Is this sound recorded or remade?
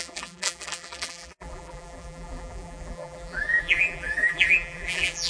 remade